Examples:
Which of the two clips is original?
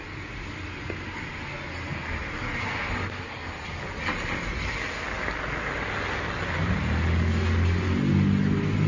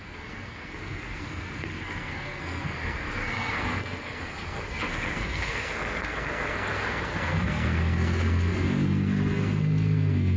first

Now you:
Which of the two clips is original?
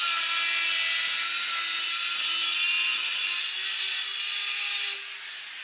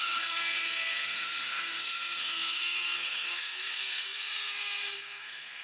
first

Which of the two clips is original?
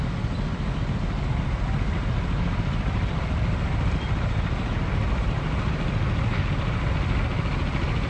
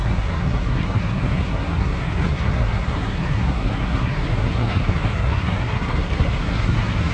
first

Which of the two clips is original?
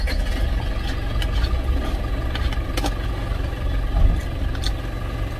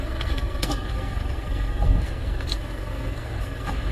first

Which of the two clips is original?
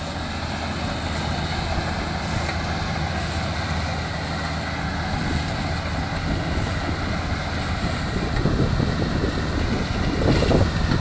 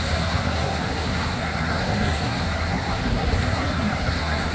first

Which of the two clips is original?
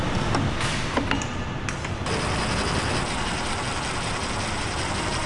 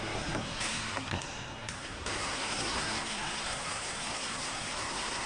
first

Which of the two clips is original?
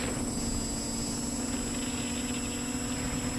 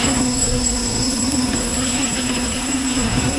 first